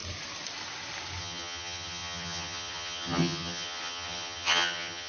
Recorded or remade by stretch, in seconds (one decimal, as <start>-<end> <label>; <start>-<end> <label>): 0.0-1.2 recorded; 1.2-5.1 remade